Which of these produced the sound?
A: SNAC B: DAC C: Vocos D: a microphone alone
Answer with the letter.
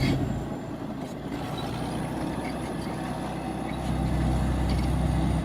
D